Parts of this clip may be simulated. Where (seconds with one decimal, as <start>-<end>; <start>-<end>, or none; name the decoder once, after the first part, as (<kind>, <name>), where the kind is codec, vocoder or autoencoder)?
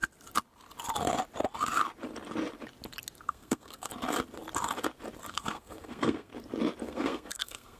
3.3-3.9 (codec, SNAC); 5.3-6.3; 6.8-7.8